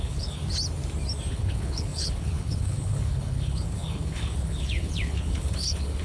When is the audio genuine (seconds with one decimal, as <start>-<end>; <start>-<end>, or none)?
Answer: 0.4-1.3